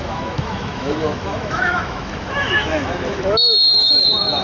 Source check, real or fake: fake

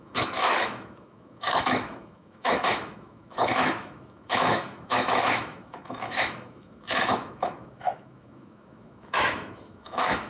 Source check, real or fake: fake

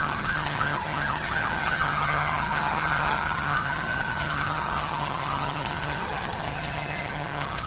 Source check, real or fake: fake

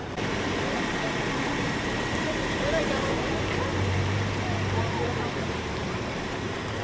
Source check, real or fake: fake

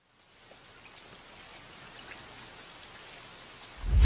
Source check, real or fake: real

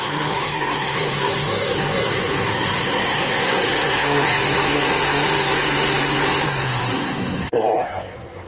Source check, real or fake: fake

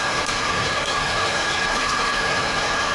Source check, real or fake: fake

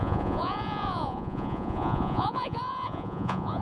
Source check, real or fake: fake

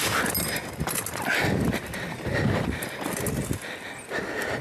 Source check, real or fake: real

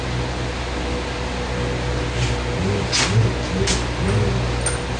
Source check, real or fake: real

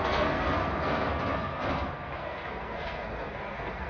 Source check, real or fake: fake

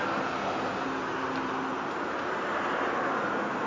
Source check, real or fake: real